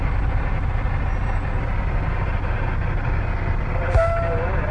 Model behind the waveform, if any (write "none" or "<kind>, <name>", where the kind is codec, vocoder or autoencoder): none